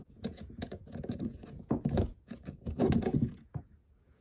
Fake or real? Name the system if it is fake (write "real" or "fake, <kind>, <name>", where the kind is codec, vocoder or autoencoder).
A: fake, vocoder, Vocos